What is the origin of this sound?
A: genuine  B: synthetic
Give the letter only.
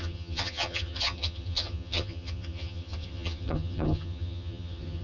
B